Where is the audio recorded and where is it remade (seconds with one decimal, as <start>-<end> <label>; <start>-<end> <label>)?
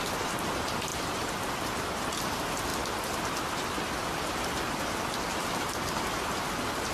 0.0-0.9 recorded; 0.9-1.9 remade; 1.9-6.9 recorded